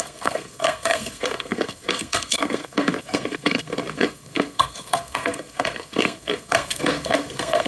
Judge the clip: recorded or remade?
remade